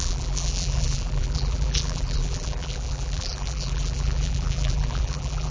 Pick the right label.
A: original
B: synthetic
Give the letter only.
B